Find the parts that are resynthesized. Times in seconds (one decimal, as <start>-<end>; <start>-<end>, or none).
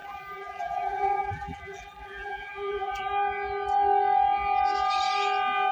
0.0-3.1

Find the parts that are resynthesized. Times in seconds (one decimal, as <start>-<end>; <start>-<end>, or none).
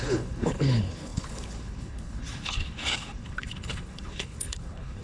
0.0-5.0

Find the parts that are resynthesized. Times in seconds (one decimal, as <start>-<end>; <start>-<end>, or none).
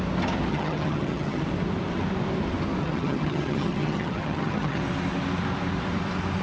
0.5-1.4; 2.8-4.8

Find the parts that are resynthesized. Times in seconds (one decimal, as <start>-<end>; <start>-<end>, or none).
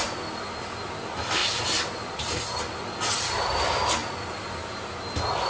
none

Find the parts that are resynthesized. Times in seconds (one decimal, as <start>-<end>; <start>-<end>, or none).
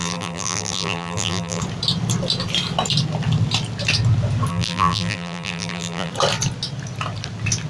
0.0-1.6; 4.5-6.1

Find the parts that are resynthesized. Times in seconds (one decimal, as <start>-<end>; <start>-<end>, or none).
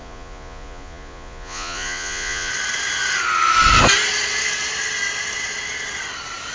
0.0-2.5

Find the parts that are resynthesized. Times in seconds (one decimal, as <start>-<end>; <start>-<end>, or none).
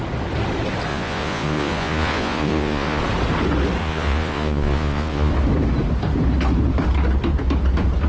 0.9-3.0; 3.8-5.3